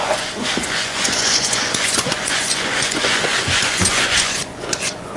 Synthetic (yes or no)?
yes